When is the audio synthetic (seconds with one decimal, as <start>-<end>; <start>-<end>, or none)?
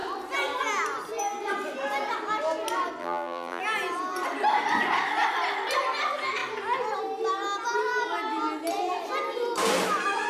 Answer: 3.0-3.6